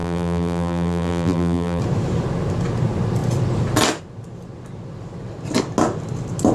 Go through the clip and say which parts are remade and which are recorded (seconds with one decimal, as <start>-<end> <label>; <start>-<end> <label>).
0.0-1.8 remade; 1.8-6.5 recorded